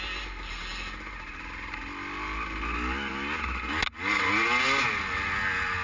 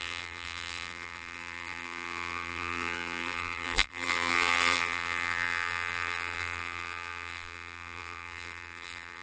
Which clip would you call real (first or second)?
first